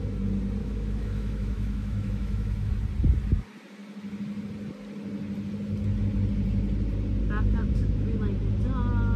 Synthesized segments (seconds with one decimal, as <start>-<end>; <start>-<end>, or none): 0.6-2.7; 7.6-8.2